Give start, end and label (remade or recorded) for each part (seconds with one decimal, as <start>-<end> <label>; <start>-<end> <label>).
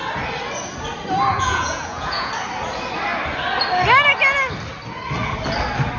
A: 0.0-1.3 recorded; 1.3-2.3 remade; 2.3-6.0 recorded